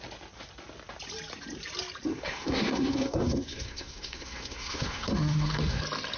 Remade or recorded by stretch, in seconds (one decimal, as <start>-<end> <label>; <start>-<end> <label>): 0.0-2.1 recorded; 2.1-5.8 remade; 5.8-6.2 recorded